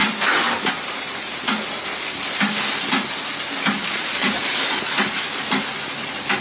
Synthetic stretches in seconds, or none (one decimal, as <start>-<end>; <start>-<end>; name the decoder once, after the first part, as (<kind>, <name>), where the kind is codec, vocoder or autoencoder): none